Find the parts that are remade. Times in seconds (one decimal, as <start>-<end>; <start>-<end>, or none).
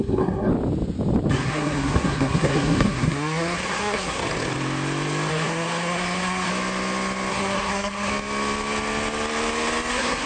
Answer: 0.0-0.5; 1.3-4.2; 5.3-6.5; 7.3-8.1; 9.9-10.3